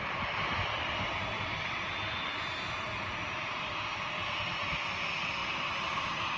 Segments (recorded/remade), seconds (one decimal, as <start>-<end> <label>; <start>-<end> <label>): 0.0-6.4 recorded